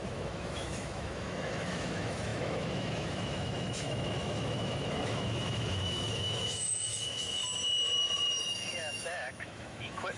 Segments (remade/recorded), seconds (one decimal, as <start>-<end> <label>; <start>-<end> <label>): 0.0-7.4 remade; 7.4-8.4 recorded; 8.4-10.2 remade